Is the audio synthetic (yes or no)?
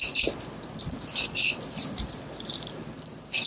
no